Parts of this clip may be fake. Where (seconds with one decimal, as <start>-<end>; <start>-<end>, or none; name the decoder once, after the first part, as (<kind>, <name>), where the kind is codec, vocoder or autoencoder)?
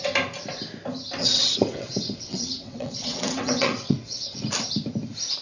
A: 1.2-4.4 (vocoder, WaveNeXt)